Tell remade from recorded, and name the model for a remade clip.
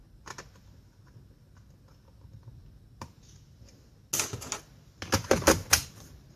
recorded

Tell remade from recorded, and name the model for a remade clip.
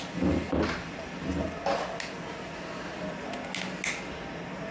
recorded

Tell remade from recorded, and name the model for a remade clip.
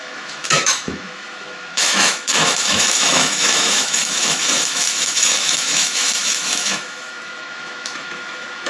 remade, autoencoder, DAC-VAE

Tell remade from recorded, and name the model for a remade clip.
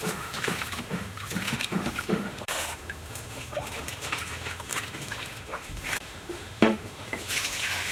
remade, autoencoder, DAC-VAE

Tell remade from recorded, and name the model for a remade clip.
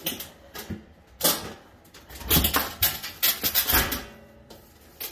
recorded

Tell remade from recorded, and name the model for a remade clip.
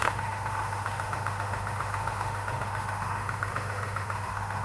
remade, autoencoder, DAC-VAE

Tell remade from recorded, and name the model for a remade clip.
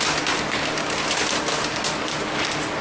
recorded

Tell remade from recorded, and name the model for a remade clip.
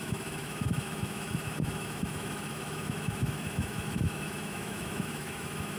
remade, autoencoder, DAC-VAE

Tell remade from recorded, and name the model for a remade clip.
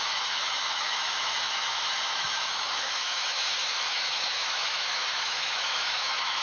remade, autoencoder, DAC-VAE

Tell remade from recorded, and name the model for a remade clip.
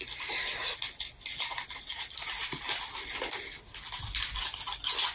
recorded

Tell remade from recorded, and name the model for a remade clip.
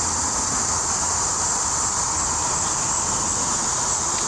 recorded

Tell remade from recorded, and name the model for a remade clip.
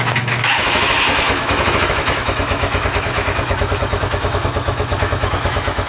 remade, autoencoder, DAC-VAE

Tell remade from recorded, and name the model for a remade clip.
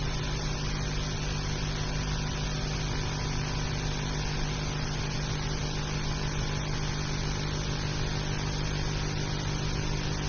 recorded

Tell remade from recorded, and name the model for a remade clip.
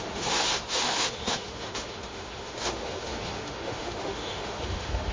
remade, autoencoder, DAC-VAE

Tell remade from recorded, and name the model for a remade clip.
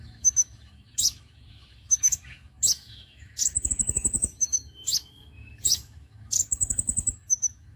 remade, autoencoder, DAC-VAE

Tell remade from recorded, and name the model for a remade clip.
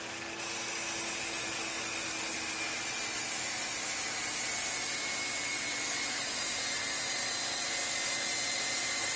recorded